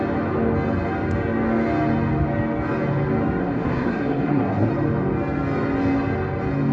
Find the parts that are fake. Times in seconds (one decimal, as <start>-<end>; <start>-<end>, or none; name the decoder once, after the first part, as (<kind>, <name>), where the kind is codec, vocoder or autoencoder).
3.4-4.7 (codec, SNAC)